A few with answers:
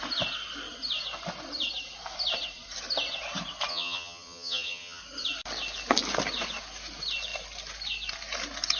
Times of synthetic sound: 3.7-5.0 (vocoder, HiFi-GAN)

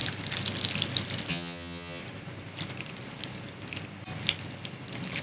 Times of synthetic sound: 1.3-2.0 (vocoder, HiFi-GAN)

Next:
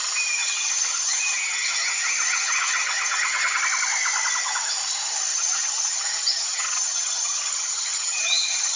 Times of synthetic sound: 0.4-3.6 (vocoder, HiFi-GAN); 5.3-8.8

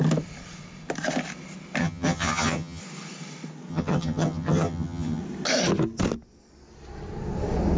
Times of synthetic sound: 1.8-2.8 (vocoder, HiFi-GAN); 3.7-5.2

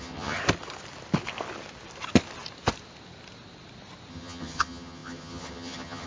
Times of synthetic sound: 0.0-0.4 (vocoder, HiFi-GAN); 4.1-6.1